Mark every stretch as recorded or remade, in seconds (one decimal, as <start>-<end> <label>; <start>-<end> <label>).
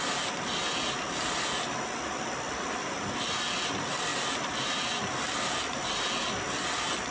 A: 0.0-7.1 recorded